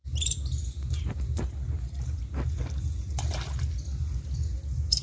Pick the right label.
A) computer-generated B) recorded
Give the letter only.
B